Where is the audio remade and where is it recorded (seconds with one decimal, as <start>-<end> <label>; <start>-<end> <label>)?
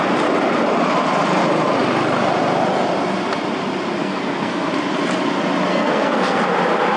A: 0.0-4.0 recorded; 4.0-4.7 remade; 4.7-5.7 recorded; 5.7-6.4 remade; 6.4-7.0 recorded